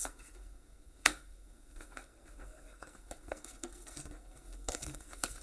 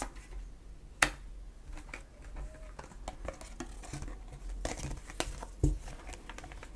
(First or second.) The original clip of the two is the second